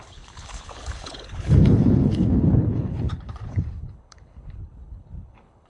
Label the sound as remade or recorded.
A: remade